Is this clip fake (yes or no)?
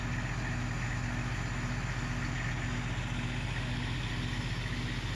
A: no